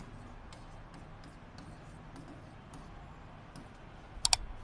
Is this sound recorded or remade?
recorded